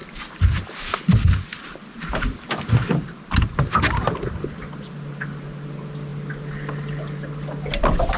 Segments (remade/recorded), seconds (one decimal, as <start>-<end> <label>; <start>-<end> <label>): 0.0-8.2 recorded